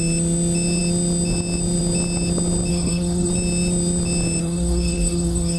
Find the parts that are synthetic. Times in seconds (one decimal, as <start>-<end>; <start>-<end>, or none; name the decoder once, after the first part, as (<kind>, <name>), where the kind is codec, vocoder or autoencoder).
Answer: 2.7-3.3 (codec, SNAC); 4.4-5.6